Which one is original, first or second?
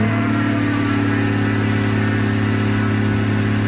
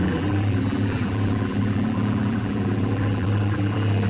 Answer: first